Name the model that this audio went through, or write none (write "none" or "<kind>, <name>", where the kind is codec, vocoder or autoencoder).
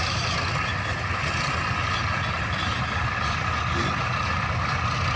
none